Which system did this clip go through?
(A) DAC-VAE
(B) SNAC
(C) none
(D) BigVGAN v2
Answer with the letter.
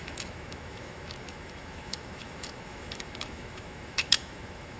A